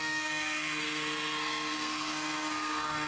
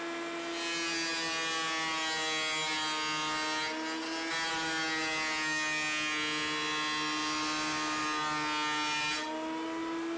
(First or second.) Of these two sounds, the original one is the second